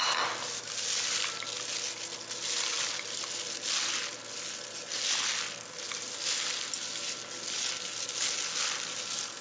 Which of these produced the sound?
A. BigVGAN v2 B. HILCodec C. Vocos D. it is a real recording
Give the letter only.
D